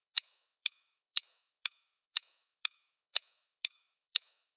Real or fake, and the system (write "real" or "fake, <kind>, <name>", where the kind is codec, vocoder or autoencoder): fake, autoencoder, DAC-VAE